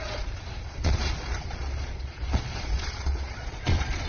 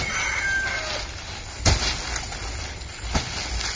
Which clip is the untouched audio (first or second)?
second